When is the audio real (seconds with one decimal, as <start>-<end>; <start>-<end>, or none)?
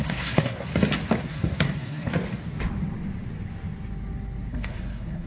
0.7-1.2; 2.1-4.5